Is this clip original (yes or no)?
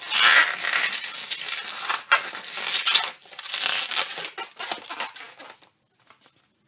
yes